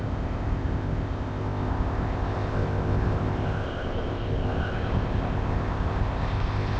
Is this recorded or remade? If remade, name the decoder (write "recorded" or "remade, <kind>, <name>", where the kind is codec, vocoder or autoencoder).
remade, codec, ZipCodec